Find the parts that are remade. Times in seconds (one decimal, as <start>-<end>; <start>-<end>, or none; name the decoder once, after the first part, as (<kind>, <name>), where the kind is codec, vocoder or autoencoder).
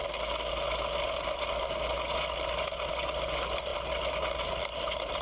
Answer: none